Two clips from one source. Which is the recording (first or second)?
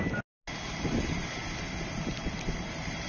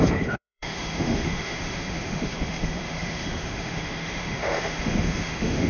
first